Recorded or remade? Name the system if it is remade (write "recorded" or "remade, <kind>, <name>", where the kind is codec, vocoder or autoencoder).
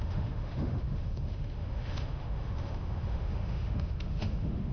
remade, autoencoder, DAC-VAE